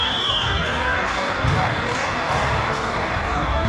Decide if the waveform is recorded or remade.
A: remade